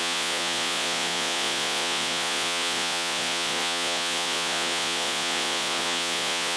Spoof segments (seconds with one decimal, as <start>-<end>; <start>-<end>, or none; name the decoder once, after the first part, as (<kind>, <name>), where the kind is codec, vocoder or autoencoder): 0.0-6.6 (vocoder, Vocos)